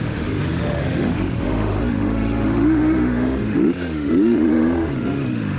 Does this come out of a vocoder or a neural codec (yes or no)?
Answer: yes